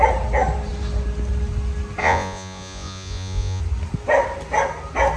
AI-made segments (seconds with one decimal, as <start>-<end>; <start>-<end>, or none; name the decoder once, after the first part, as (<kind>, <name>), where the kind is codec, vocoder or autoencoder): 2.0-3.6 (vocoder, Vocos)